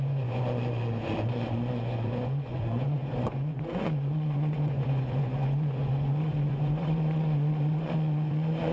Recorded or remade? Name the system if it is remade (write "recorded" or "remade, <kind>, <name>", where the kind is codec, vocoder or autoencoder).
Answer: remade, vocoder, Vocos